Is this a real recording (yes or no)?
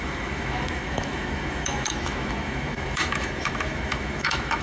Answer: no